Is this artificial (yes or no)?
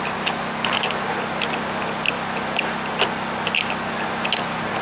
no